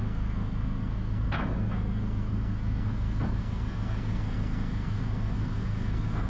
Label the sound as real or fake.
fake